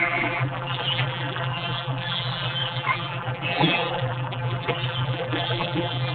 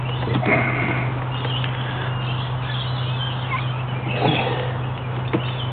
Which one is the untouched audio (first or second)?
second